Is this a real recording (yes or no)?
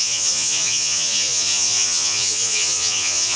no